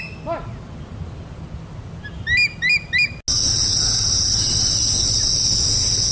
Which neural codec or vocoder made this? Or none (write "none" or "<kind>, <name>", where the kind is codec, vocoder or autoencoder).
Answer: none